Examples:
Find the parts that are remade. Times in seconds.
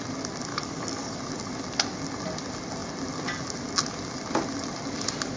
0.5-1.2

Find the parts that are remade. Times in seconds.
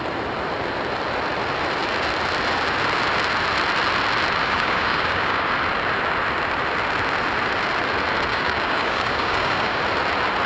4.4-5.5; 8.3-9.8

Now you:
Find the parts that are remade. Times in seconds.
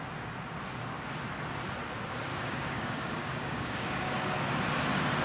2.3-4.2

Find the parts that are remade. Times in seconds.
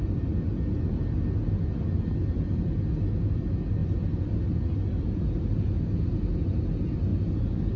none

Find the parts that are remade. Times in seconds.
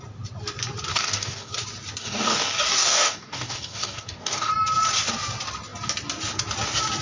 0.9-1.5; 2.0-4.5